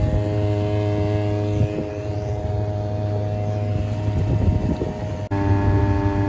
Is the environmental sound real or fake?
real